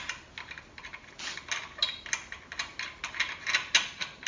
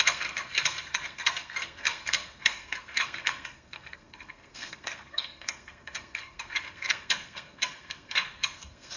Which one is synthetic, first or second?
second